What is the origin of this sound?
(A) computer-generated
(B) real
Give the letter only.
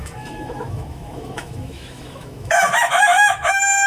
A